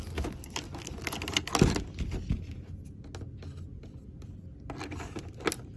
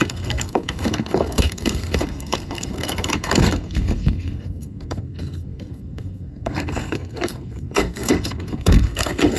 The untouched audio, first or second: first